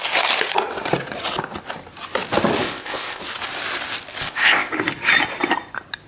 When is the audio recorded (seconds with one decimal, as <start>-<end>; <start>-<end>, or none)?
0.0-2.6; 3.2-4.2; 4.7-6.1